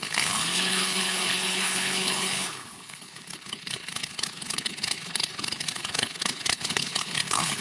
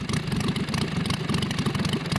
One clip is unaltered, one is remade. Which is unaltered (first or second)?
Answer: second